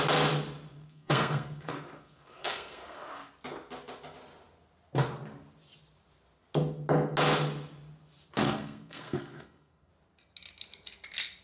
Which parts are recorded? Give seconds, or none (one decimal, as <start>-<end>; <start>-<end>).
0.0-0.7; 3.3-8.4; 9.9-11.4